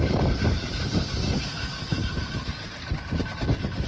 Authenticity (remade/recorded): recorded